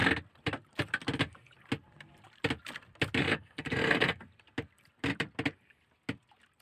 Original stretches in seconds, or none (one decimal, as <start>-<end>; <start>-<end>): 0.0-3.2; 4.2-6.6